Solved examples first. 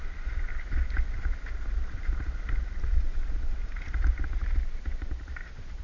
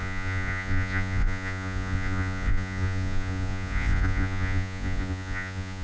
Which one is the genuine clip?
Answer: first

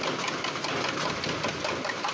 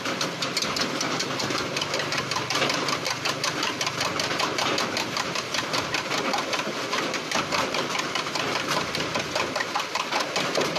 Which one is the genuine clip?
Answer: first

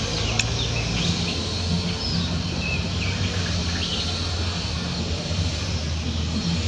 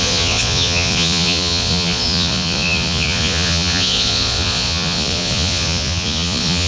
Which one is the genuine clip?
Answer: first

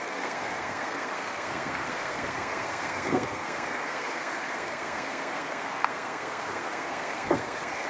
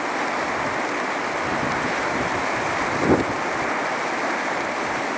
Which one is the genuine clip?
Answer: second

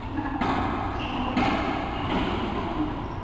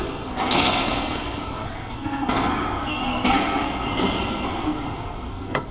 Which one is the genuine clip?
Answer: first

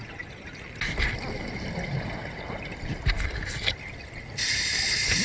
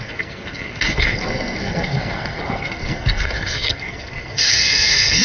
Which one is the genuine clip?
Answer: first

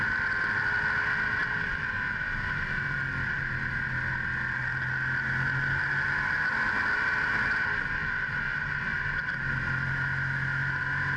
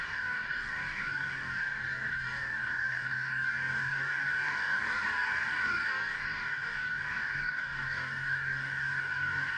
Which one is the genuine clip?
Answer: first